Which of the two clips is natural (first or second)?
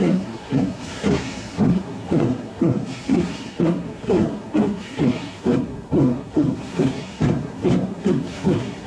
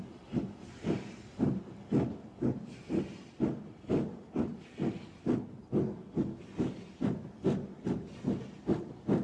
second